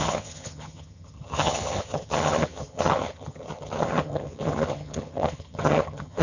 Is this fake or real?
fake